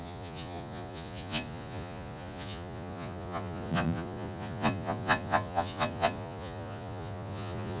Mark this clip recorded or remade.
remade